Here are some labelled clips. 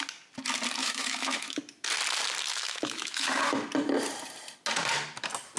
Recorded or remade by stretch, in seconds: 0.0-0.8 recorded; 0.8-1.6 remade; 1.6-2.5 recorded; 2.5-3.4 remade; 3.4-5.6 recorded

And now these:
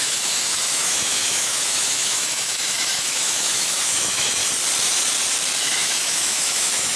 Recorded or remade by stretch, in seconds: 0.0-4.4 remade; 4.4-5.6 recorded; 5.6-7.0 remade

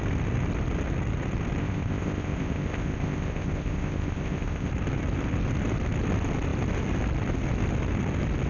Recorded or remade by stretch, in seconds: 0.0-1.6 recorded; 1.6-4.7 remade; 4.7-8.5 recorded

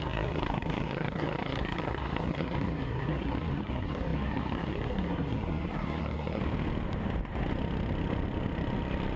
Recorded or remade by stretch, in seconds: 0.0-6.4 remade; 6.4-9.2 recorded

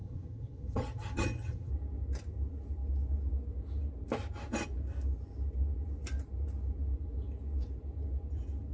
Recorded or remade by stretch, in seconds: 0.0-1.7 remade; 1.7-8.7 recorded

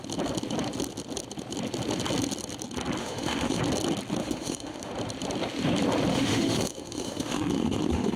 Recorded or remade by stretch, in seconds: 0.0-3.0 recorded; 3.0-3.6 remade; 3.6-4.2 recorded; 4.2-4.9 remade; 4.9-6.1 recorded; 6.1-8.2 remade

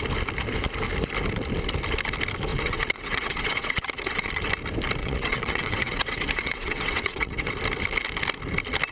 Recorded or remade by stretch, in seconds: 0.0-2.5 recorded; 2.5-4.3 remade; 4.3-5.0 recorded; 5.0-7.5 remade; 7.5-8.9 recorded